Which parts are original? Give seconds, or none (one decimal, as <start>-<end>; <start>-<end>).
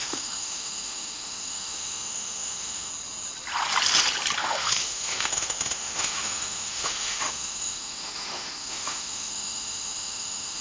2.9-4.4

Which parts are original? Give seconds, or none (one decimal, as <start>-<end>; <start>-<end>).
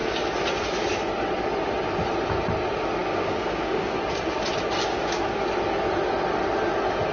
0.0-3.0; 4.0-4.8; 5.4-7.1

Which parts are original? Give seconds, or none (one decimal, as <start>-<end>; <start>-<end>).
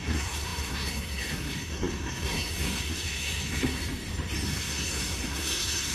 3.8-4.5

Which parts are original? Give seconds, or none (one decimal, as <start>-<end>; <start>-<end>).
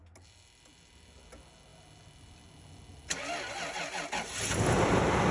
0.0-5.3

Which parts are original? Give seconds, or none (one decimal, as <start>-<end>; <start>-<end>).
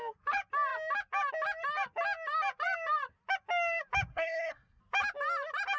0.0-4.1; 4.8-5.8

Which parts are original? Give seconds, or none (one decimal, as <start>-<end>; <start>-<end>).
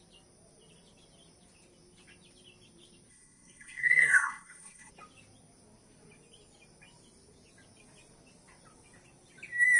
0.0-3.1; 4.9-9.8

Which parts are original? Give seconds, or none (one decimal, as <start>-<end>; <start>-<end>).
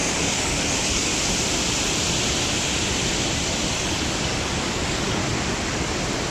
1.1-3.7; 5.2-6.3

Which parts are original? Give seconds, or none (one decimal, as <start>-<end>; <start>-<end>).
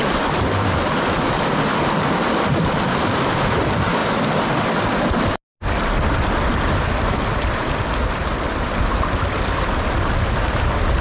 0.0-11.0